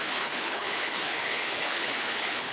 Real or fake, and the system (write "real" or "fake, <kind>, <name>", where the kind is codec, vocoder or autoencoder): fake, codec, HILCodec